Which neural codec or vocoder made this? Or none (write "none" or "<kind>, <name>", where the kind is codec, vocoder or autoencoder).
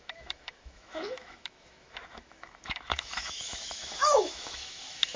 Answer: autoencoder, DAC-VAE